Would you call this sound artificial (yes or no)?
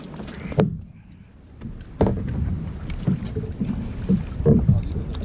no